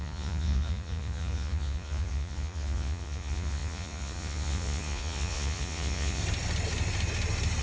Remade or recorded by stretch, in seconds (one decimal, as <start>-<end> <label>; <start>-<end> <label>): 0.0-6.2 remade; 6.2-7.6 recorded